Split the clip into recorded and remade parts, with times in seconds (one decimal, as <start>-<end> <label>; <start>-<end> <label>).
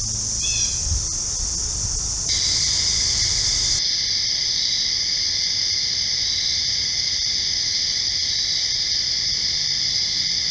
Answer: 0.0-10.5 recorded